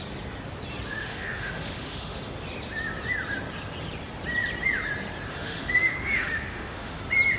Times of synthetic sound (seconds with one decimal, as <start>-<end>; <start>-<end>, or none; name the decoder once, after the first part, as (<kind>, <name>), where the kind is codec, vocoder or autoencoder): 0.9-2.2 (autoencoder, DAC-VAE); 5.3-7.0